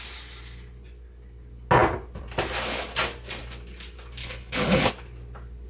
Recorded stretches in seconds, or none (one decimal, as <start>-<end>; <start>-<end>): 0.0-4.2; 4.9-5.7